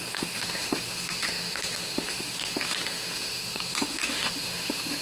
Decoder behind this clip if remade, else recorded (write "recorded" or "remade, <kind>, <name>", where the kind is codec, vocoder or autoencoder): remade, autoencoder, DAC-VAE